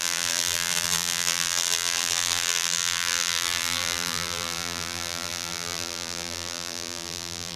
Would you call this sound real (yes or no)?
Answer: no